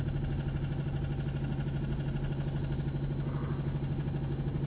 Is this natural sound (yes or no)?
yes